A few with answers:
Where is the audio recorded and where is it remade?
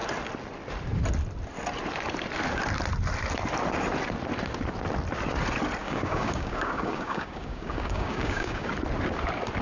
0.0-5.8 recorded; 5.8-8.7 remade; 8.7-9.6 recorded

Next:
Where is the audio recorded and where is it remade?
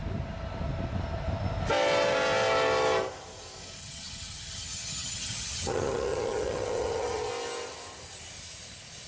0.0-3.8 recorded; 3.8-7.3 remade; 7.3-9.1 recorded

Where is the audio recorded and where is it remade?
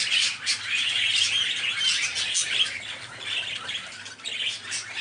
0.0-5.0 recorded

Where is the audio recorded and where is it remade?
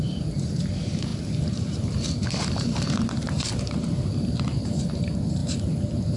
0.0-5.4 remade; 5.4-6.2 recorded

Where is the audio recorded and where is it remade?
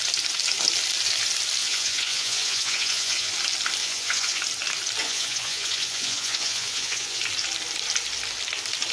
0.0-1.6 recorded; 1.6-3.3 remade; 3.3-3.8 recorded; 3.8-4.4 remade; 4.4-5.0 recorded; 5.0-7.2 remade; 7.2-8.9 recorded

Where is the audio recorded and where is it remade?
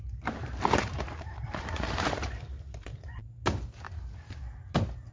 0.0-0.4 recorded; 0.4-2.3 remade; 2.3-5.1 recorded